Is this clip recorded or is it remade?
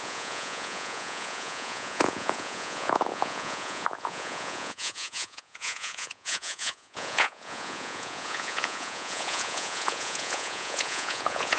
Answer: remade